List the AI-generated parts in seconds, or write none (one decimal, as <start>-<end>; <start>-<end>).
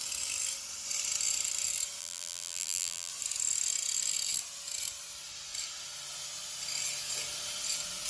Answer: 2.0-3.1